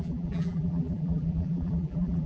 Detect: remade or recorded remade